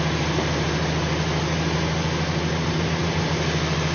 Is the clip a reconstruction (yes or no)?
no